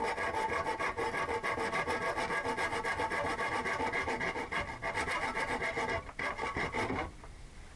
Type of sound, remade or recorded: recorded